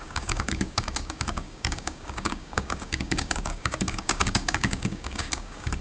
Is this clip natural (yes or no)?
no